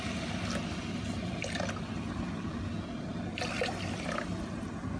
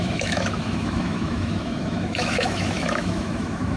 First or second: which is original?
first